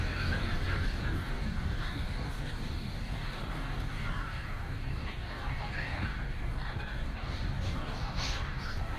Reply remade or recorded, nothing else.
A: remade